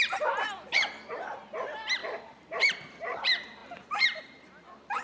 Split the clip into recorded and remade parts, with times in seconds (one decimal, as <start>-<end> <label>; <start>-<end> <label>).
0.0-5.0 remade